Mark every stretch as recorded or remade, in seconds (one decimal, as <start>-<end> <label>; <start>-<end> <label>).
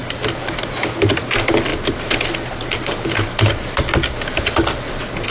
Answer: 0.0-5.3 recorded